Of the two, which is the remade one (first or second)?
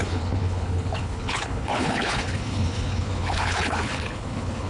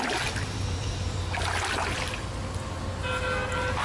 first